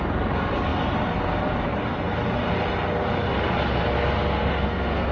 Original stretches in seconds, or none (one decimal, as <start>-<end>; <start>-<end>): 0.0-4.3

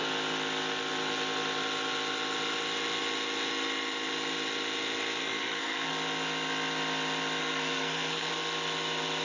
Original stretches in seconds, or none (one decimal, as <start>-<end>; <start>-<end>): 0.0-5.2; 5.9-7.4; 8.3-9.2

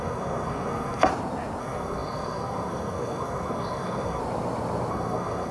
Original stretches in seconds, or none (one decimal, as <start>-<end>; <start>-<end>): 1.1-1.6; 4.2-4.9

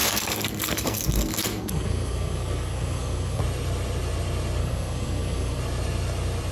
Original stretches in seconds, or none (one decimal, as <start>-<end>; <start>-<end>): 3.4-4.6; 5.6-6.5